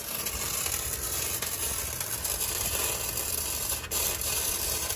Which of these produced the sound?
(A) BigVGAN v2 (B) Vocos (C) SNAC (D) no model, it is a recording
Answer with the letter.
A